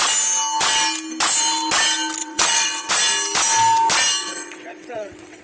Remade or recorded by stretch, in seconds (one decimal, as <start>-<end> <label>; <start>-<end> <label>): 0.0-2.2 recorded; 2.2-2.9 remade; 2.9-4.2 recorded; 4.2-5.4 remade